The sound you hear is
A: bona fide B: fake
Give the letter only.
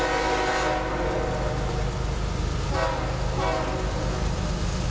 A